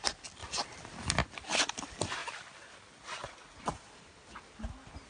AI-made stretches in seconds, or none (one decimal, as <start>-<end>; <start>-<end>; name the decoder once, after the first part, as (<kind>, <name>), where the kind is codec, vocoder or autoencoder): none